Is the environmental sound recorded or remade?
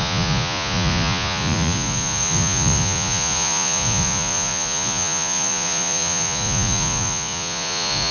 remade